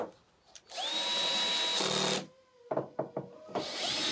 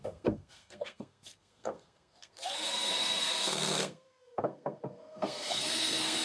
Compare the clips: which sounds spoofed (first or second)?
second